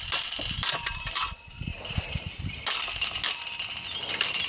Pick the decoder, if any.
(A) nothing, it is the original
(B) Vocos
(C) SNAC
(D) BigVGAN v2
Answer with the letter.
A